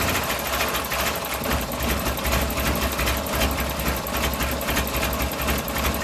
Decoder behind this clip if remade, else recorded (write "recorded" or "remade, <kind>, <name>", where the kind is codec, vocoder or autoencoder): recorded